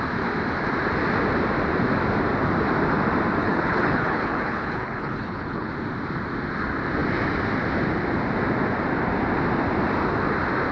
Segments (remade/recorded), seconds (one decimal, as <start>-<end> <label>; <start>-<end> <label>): 0.0-3.4 recorded; 3.4-5.7 remade; 5.7-10.7 recorded